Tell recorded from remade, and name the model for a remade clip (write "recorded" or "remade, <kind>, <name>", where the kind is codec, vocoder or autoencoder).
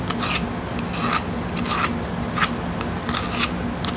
recorded